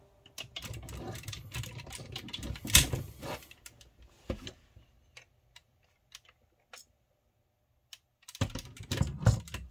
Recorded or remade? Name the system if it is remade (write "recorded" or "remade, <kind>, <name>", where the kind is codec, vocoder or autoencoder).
recorded